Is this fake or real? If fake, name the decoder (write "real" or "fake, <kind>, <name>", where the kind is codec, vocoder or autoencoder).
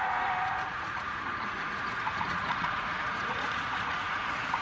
fake, vocoder, Vocos